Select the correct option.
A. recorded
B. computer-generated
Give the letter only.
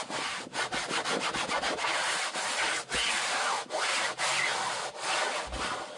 A